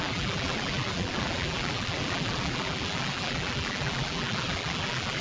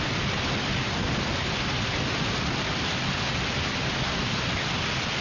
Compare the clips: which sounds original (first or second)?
second